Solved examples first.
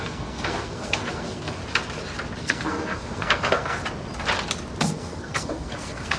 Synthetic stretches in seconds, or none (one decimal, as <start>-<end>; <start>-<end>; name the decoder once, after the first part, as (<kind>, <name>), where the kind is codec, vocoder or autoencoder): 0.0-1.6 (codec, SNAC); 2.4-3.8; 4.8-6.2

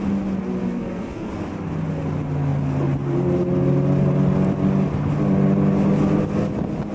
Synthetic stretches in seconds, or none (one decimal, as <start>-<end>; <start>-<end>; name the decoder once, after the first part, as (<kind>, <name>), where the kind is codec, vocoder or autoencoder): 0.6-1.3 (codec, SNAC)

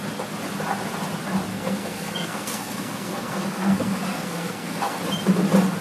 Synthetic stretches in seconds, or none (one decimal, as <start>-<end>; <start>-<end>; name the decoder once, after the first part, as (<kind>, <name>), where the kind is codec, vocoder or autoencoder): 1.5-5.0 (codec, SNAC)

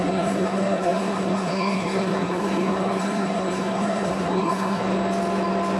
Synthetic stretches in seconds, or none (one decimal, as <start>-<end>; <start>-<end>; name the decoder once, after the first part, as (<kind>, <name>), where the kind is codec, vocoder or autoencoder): 0.0-4.9 (codec, SNAC)

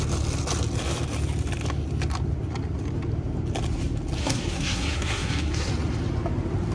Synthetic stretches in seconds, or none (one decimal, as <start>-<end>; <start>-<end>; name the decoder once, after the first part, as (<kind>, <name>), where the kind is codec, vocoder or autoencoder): 4.2-5.7 (codec, SNAC)